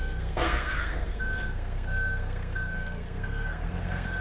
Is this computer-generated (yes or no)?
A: yes